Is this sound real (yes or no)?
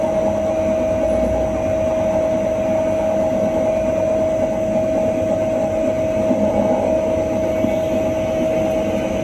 yes